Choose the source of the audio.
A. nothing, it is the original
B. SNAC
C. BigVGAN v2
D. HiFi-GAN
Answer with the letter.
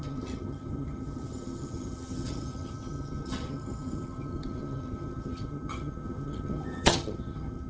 D